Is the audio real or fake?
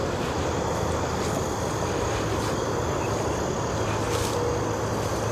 real